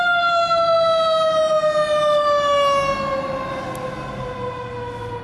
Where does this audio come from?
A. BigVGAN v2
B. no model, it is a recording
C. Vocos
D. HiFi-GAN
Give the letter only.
B